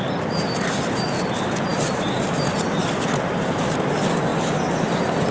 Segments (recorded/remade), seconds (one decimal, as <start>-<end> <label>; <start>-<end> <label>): 0.0-5.3 recorded